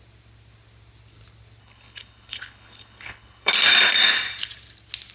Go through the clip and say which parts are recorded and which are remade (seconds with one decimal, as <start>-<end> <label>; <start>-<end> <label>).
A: 0.0-1.6 recorded; 1.6-3.5 remade; 3.5-5.1 recorded

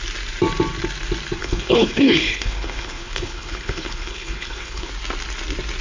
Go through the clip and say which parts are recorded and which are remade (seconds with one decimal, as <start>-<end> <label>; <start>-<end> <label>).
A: 0.0-1.4 recorded; 1.4-4.9 remade; 4.9-5.8 recorded

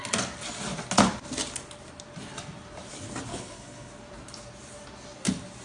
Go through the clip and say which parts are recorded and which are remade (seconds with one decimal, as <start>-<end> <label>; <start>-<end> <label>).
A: 0.0-3.3 recorded; 3.3-3.9 remade; 3.9-5.6 recorded

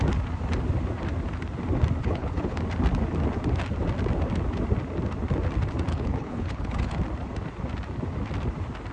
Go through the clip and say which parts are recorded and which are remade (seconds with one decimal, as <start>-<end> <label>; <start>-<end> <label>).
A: 0.0-2.0 recorded; 2.0-2.6 remade; 2.6-5.9 recorded; 5.9-7.0 remade; 7.0-8.9 recorded

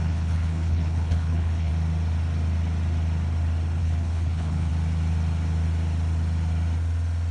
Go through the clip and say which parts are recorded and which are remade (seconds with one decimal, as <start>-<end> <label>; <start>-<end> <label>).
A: 0.0-1.7 remade; 1.7-3.8 recorded; 3.8-4.7 remade; 4.7-7.3 recorded

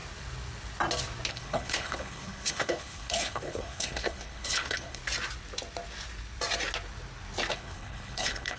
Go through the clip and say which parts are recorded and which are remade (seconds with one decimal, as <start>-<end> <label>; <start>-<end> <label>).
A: 0.0-1.3 recorded; 1.3-5.0 remade; 5.0-7.5 recorded; 7.5-8.6 remade